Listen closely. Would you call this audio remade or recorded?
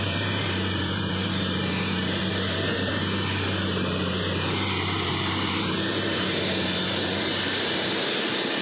remade